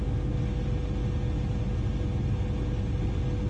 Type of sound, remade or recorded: recorded